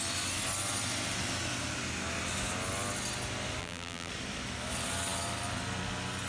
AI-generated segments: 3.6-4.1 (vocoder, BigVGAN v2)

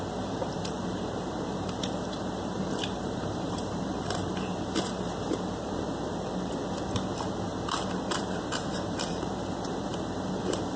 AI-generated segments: 0.0-6.6 (vocoder, BigVGAN v2); 8.0-10.8